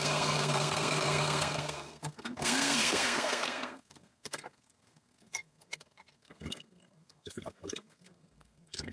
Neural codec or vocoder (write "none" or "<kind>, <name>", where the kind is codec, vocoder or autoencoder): codec, SNAC